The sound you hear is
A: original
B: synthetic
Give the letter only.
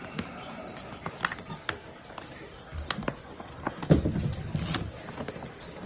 A